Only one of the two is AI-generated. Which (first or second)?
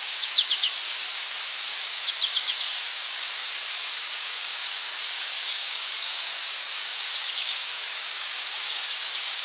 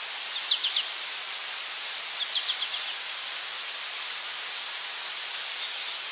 first